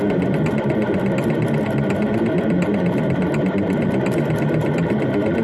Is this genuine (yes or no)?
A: yes